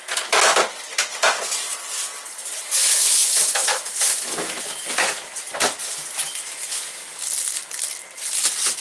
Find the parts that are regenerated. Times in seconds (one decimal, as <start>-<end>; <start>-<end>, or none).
2.8-4.6